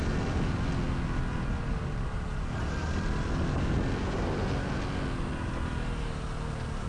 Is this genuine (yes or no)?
yes